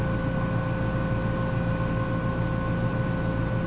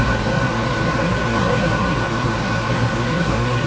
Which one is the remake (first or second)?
second